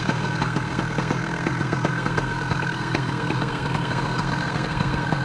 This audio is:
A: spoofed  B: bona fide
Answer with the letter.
A